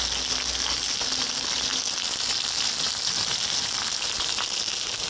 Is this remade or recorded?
recorded